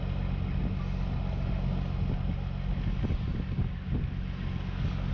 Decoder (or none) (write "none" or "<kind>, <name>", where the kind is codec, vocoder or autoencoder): none